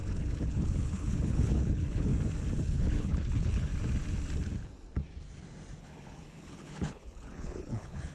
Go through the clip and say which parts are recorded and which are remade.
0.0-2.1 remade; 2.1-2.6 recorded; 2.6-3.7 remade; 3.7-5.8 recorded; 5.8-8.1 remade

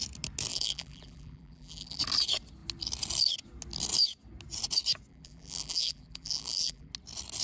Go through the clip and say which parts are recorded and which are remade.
0.0-0.5 recorded; 0.5-2.0 remade; 2.0-5.1 recorded; 5.1-6.9 remade; 6.9-7.4 recorded

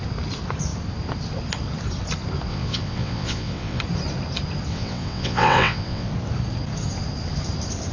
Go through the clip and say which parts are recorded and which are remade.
0.0-2.5 recorded; 2.5-3.8 remade; 3.8-4.7 recorded; 4.7-6.1 remade; 6.1-7.9 recorded

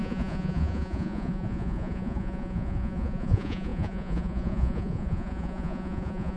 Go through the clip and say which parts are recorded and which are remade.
0.0-6.4 remade

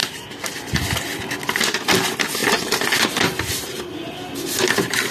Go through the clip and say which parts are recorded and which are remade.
0.0-5.1 recorded

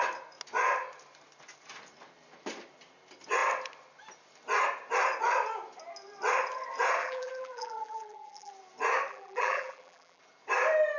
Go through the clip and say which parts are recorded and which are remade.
0.0-7.0 recorded; 7.0-8.5 remade; 8.5-9.1 recorded; 9.1-10.2 remade; 10.2-11.0 recorded

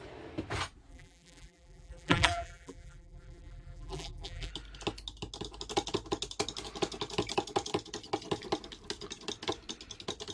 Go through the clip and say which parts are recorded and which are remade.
0.0-0.9 recorded; 0.9-4.5 remade; 4.5-10.3 recorded

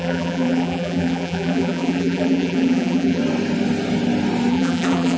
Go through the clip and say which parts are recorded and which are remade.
0.0-3.2 remade; 3.2-4.5 recorded; 4.5-5.2 remade